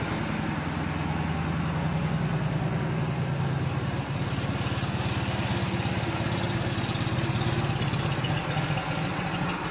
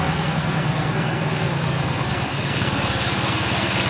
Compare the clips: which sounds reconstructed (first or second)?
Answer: second